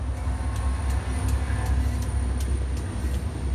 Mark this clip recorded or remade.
recorded